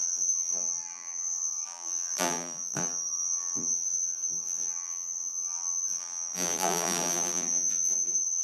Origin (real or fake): fake